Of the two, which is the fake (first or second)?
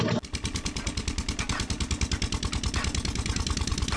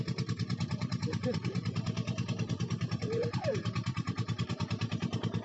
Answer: second